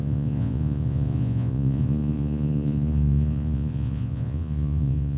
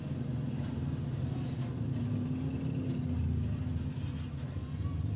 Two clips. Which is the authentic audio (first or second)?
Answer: second